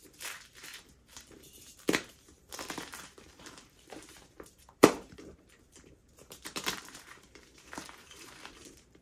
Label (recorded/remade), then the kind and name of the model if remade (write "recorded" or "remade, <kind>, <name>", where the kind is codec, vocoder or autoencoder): remade, vocoder, BigVGAN v2